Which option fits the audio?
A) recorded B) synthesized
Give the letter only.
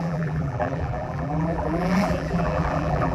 B